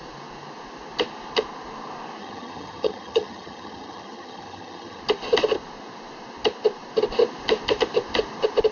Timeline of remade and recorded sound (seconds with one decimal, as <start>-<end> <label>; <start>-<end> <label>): 0.0-2.2 recorded; 2.2-5.0 remade; 5.0-8.7 recorded